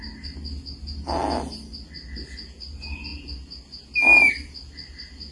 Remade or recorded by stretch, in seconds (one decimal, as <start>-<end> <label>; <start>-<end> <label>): 0.0-5.3 recorded